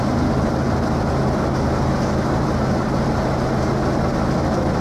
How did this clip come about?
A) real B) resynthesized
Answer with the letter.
A